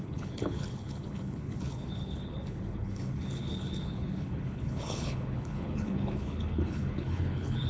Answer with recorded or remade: remade